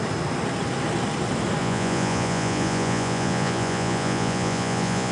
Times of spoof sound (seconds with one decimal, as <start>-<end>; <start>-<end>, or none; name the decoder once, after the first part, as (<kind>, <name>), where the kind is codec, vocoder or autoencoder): 1.6-5.1 (vocoder, Vocos)